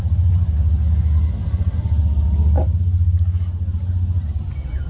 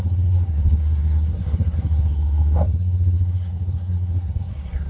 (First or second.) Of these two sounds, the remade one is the second